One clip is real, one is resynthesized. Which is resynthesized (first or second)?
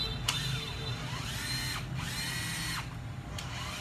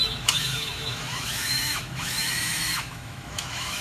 second